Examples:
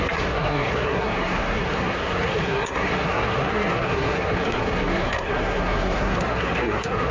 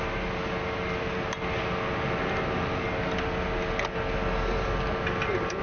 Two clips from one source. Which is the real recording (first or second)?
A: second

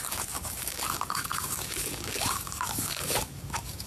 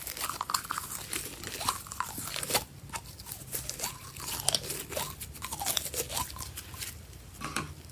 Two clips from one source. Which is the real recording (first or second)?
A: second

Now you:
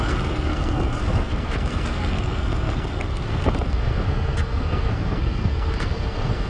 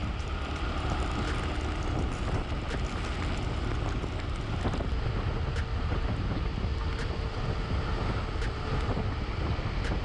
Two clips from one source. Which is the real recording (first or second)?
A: second